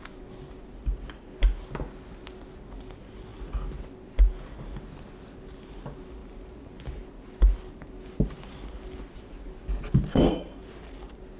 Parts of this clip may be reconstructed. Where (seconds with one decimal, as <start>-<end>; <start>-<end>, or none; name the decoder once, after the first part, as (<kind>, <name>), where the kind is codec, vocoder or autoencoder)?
10.1-10.6 (codec, SNAC)